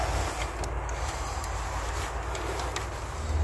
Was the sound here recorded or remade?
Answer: recorded